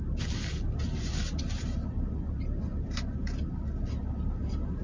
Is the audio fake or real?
real